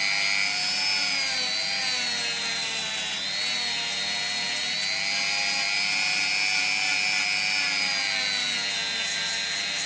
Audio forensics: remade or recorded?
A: recorded